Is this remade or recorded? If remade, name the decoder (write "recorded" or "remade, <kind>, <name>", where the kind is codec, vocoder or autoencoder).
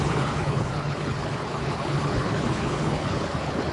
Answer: remade, codec, HILCodec